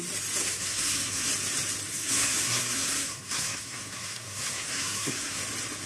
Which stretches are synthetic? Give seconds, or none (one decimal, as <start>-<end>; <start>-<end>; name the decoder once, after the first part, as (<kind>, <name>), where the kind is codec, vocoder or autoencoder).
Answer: 0.4-1.3 (codec, SNAC); 1.9-5.4

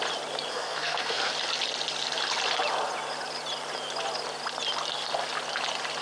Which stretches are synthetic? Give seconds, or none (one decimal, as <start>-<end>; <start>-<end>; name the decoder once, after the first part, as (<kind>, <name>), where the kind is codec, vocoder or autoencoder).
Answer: 0.5-1.3 (codec, SNAC)

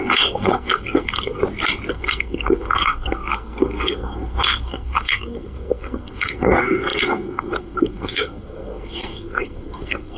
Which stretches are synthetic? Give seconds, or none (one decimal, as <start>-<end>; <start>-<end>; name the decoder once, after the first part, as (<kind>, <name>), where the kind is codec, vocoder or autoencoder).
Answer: 0.0-1.4 (codec, SNAC); 1.9-10.2

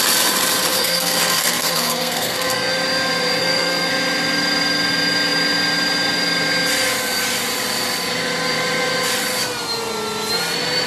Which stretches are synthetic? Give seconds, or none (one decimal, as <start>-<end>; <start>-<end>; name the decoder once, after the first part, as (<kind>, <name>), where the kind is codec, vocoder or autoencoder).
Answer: 0.7-2.7 (codec, SNAC); 3.4-3.9

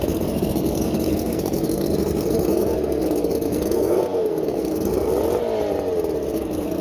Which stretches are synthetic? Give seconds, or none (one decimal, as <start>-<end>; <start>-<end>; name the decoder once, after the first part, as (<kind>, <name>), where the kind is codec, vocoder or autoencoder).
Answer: 0.0-5.1 (codec, SNAC); 6.3-6.8

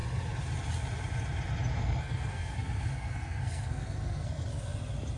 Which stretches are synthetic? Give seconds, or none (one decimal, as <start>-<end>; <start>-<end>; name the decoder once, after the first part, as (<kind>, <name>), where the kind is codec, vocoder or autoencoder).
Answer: 1.8-4.6 (codec, SNAC)

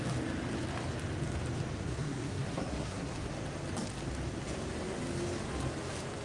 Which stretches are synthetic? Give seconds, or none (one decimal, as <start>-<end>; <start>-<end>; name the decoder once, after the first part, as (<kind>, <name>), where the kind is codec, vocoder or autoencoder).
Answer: 1.8-3.3 (codec, SNAC)

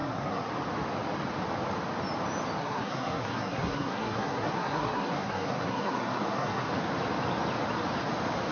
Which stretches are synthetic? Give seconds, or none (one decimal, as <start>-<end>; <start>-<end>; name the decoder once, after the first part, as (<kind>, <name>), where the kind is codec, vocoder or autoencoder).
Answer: 0.0-0.5 (codec, SNAC); 2.6-6.7